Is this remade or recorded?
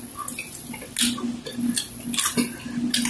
recorded